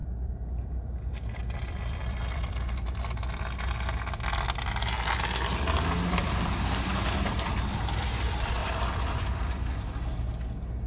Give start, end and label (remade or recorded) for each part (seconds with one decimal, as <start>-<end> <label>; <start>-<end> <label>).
0.0-3.0 remade; 3.0-6.2 recorded; 6.2-6.9 remade; 6.9-8.6 recorded; 8.6-9.6 remade; 9.6-10.9 recorded